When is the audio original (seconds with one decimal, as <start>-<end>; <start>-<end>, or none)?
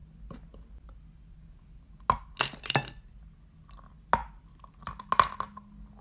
0.0-6.0